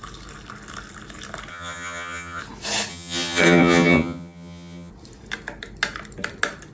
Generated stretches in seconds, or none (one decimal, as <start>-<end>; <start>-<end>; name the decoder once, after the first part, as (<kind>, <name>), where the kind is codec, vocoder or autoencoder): 1.5-2.4 (vocoder, HiFi-GAN); 2.9-4.9